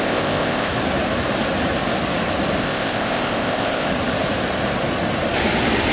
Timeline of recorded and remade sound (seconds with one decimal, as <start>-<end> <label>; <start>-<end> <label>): 0.0-0.7 remade; 0.7-2.6 recorded; 2.6-3.9 remade; 3.9-5.9 recorded